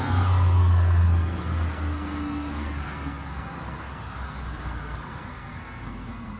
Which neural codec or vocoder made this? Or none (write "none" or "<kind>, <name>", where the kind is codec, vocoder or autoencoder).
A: codec, SNAC